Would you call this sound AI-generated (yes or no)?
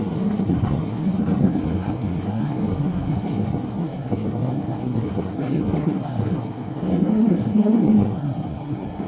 yes